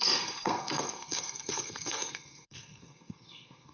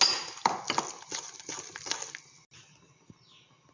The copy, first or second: first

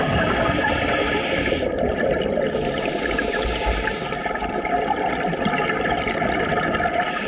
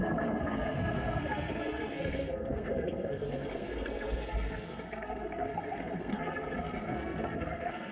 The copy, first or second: second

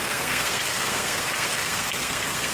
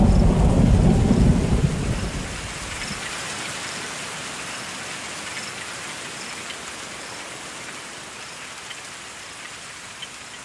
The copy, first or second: first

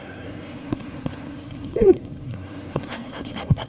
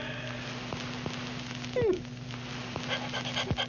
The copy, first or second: first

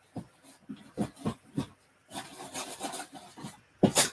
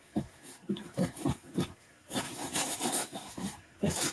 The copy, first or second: second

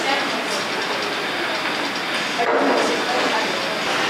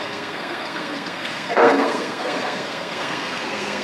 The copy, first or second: second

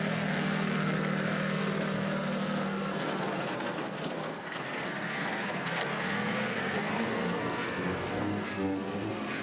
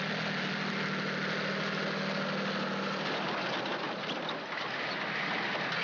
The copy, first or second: first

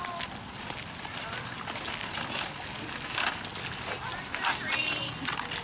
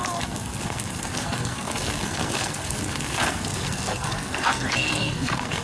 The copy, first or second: second